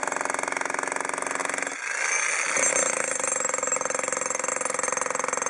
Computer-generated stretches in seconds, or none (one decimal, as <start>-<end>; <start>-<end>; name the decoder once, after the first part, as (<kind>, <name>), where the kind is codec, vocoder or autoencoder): none